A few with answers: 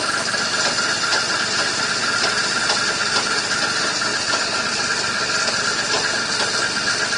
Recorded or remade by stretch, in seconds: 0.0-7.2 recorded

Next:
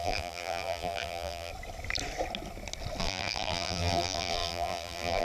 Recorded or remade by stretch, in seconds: 0.0-1.5 remade; 1.5-3.0 recorded; 3.0-5.2 remade

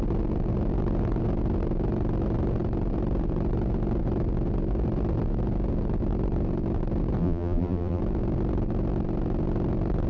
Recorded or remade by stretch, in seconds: 0.0-7.2 recorded; 7.2-8.0 remade; 8.0-10.1 recorded

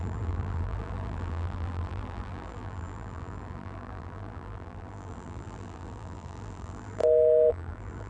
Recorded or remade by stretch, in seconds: 0.0-7.0 remade; 7.0-7.5 recorded; 7.5-8.1 remade

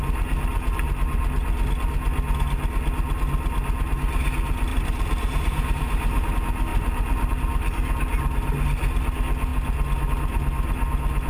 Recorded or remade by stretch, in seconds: 0.0-4.7 recorded; 4.7-6.3 remade; 6.3-6.7 recorded; 6.7-7.3 remade; 7.3-11.3 recorded